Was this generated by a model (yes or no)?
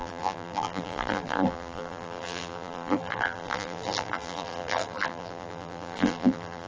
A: yes